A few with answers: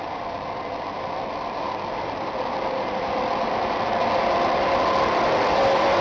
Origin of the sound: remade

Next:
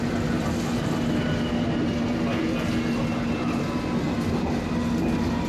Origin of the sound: recorded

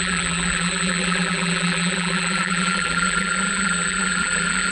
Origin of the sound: remade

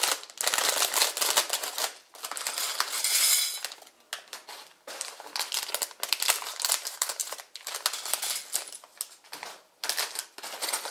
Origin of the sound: recorded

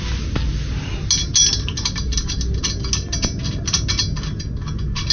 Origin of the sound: recorded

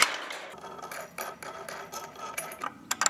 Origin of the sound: recorded